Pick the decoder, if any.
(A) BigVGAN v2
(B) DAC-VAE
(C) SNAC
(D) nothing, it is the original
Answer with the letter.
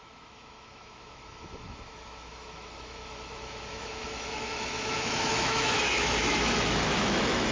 B